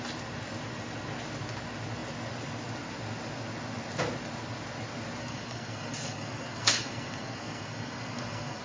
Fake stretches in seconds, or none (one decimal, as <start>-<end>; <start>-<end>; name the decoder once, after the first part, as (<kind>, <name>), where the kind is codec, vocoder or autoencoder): 5.2-8.6 (codec, SNAC)